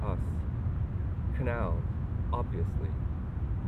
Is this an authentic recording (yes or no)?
yes